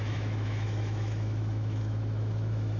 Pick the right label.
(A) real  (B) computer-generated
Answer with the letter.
B